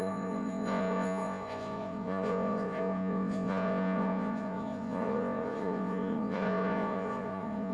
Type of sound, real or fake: fake